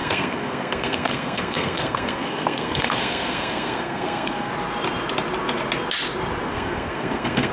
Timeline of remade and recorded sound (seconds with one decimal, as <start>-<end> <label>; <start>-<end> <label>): 0.0-4.5 remade; 4.5-6.5 recorded; 6.5-7.5 remade